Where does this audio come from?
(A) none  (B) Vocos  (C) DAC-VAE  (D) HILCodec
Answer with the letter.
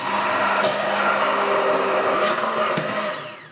A